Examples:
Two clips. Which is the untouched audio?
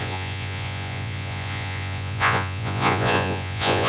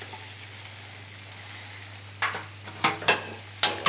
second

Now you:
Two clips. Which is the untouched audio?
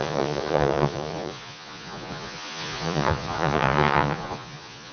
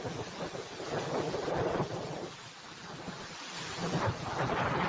second